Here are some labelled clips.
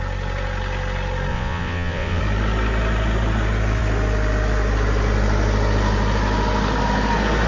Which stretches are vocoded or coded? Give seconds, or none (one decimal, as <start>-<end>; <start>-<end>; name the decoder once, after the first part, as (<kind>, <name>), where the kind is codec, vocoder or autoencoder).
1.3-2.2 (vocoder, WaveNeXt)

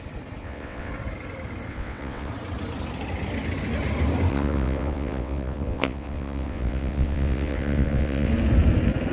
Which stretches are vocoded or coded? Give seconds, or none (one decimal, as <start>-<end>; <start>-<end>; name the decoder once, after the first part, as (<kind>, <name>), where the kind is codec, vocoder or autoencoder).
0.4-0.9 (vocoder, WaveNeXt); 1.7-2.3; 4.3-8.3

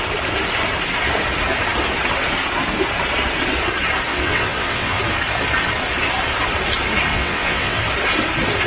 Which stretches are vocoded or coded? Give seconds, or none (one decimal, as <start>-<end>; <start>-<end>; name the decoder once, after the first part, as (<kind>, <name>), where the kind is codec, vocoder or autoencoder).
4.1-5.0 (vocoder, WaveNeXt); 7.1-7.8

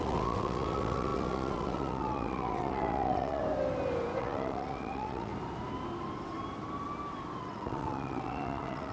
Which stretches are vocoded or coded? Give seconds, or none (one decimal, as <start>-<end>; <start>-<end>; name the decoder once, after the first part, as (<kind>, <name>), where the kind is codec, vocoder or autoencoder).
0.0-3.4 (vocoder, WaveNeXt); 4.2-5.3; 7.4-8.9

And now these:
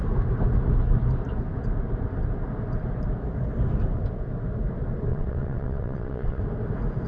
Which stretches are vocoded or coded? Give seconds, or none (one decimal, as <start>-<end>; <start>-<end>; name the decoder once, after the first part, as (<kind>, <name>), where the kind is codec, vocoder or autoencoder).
5.1-6.4 (vocoder, WaveNeXt)